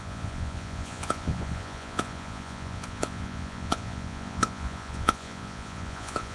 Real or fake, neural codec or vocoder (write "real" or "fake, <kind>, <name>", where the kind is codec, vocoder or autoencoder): fake, vocoder, Vocos